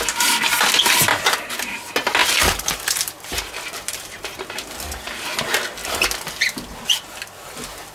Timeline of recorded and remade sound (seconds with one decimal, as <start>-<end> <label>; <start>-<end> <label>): 0.0-1.1 recorded; 1.1-1.8 remade; 1.8-2.2 recorded; 2.2-4.8 remade; 4.8-7.9 recorded